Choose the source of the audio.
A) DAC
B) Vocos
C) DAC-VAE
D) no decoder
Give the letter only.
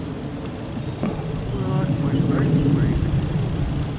D